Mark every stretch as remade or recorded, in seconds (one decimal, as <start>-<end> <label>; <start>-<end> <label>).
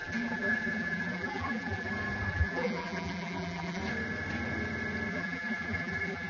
0.0-1.9 remade; 1.9-2.3 recorded; 2.3-3.8 remade; 3.8-5.1 recorded; 5.1-6.3 remade